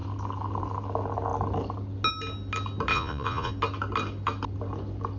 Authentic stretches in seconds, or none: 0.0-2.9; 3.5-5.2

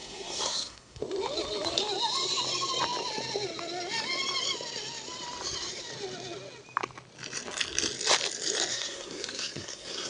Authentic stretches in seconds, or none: 1.0-8.7

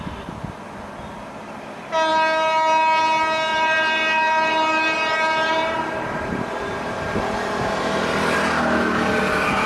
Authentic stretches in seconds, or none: 0.0-3.5; 8.5-9.7

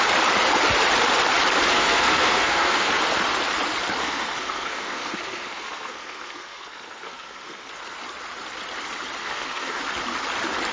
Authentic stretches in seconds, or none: 0.0-1.7; 2.9-4.0; 7.7-9.2; 9.8-10.7

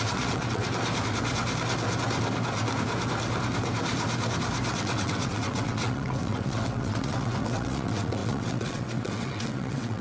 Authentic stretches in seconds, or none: 0.6-4.7

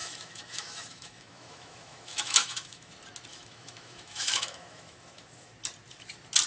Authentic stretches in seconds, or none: 2.9-3.3; 5.5-6.5